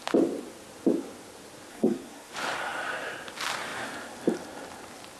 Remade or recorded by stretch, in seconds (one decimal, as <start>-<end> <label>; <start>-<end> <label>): 0.0-1.7 recorded; 1.7-2.3 remade; 2.3-5.2 recorded